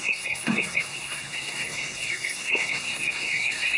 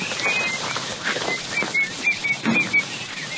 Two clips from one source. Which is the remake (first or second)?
first